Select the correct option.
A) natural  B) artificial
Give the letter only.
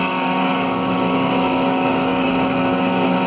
B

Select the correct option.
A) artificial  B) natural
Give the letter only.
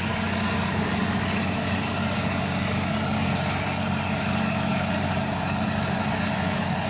A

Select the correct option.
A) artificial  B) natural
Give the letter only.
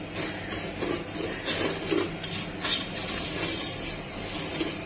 B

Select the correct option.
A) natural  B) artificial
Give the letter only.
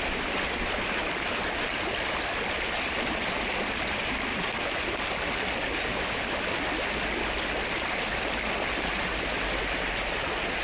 A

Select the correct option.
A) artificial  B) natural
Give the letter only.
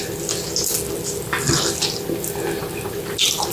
B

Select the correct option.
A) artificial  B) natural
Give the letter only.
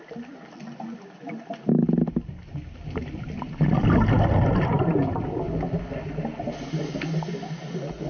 B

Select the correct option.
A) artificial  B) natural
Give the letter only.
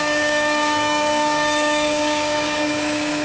A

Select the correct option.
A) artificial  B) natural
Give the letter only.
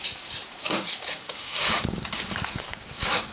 A